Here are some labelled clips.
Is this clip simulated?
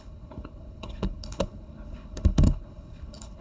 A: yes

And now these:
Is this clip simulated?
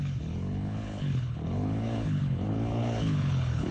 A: yes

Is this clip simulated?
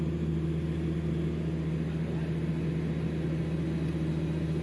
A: no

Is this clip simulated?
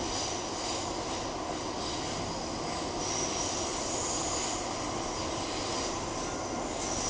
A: no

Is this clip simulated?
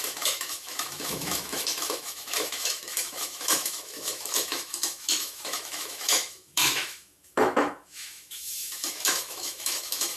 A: yes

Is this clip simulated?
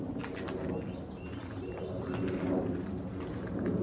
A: no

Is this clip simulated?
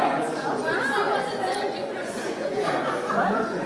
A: yes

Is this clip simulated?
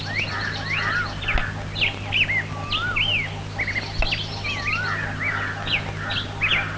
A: no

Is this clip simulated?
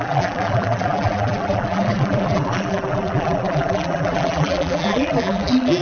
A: yes